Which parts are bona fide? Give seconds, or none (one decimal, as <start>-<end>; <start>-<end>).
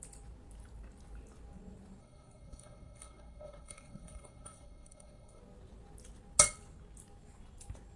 0.0-2.0; 5.4-8.0